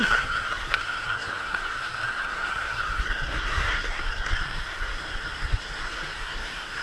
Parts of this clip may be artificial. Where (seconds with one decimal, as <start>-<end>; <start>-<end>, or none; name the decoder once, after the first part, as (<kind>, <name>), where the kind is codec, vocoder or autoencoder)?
0.0-6.8 (codec, SNAC)